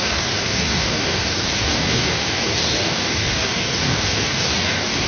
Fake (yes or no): yes